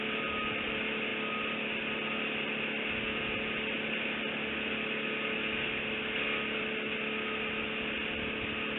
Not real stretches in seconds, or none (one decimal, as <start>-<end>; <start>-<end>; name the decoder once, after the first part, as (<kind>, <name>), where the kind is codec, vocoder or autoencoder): none